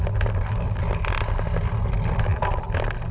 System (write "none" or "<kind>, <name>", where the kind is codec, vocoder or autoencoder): none